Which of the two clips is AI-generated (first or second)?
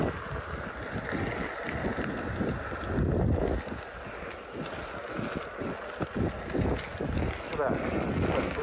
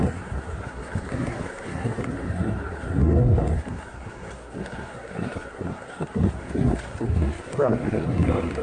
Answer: second